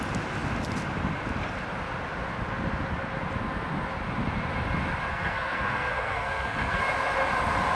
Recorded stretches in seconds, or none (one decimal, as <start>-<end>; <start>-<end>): 0.0-5.1; 6.8-7.7